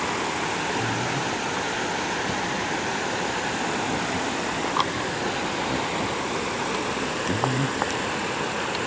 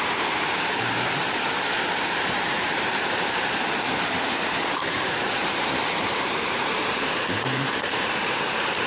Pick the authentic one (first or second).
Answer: first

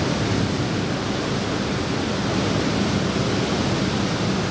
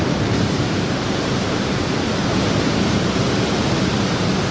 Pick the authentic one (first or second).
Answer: first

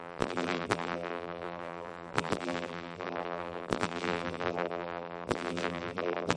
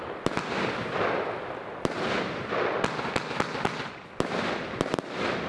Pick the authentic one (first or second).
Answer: second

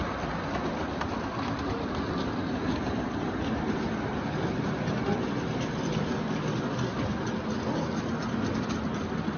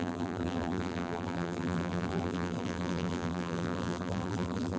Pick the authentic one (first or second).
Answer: first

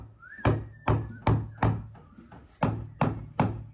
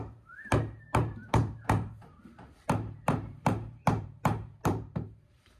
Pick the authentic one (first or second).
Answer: first